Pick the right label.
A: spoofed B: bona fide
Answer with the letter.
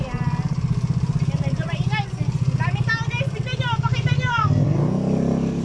B